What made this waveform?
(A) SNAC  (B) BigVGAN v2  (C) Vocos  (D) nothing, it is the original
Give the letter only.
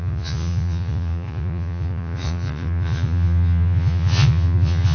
C